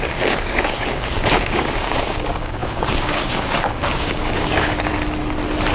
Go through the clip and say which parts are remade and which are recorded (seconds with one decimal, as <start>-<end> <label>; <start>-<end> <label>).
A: 0.0-4.9 remade; 4.9-5.7 recorded